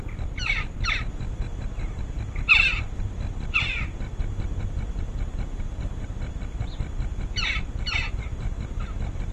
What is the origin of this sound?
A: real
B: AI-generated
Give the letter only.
A